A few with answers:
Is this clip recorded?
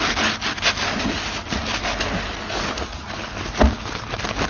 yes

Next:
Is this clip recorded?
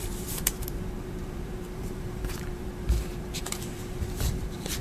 no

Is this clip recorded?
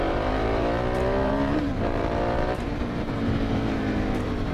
no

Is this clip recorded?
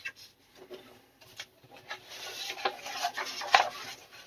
no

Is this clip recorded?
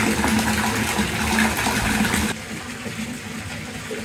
yes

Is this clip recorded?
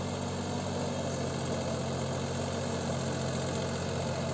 yes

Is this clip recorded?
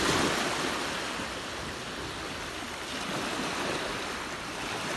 yes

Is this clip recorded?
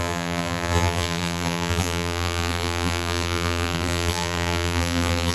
no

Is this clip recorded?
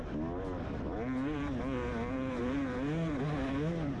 yes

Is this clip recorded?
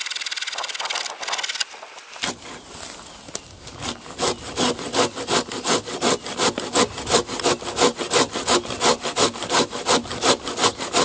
yes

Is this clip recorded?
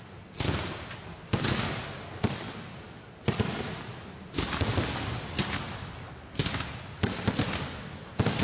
yes